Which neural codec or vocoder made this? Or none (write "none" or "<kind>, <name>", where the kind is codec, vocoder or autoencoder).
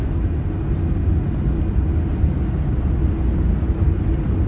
none